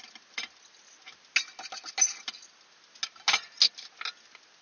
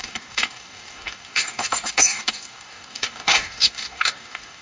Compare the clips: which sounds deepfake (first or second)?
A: second